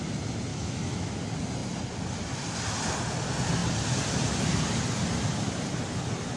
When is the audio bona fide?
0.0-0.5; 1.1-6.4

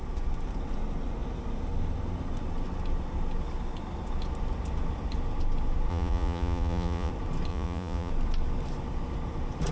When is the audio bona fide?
0.0-5.9; 7.1-7.5; 8.1-9.7

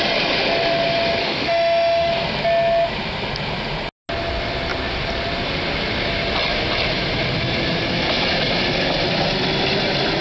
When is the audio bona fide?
0.0-1.2; 2.1-10.2

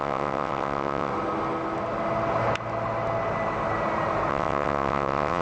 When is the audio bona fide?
1.1-4.3